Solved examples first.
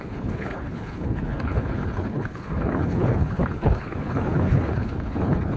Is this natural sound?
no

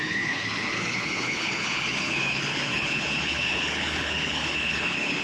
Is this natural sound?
no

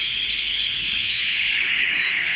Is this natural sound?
no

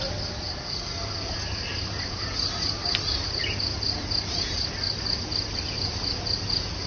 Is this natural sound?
yes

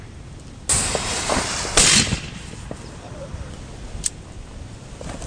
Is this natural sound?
yes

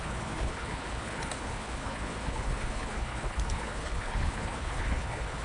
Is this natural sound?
no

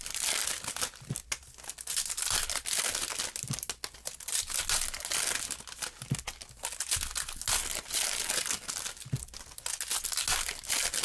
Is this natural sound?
yes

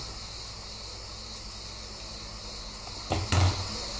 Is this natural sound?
yes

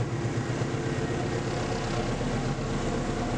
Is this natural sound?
yes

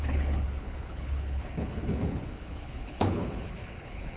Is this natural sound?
no